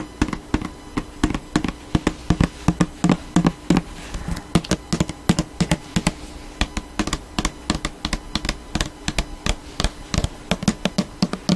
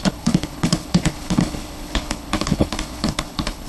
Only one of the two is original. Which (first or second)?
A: first